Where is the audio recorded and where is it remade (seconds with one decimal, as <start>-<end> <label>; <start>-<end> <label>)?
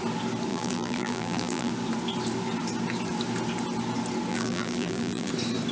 0.0-0.5 recorded; 0.5-1.7 remade; 1.7-4.3 recorded; 4.3-5.3 remade; 5.3-5.7 recorded